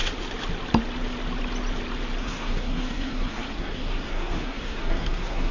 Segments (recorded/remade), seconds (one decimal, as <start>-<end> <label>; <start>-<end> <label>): 0.0-2.2 recorded; 2.2-5.5 remade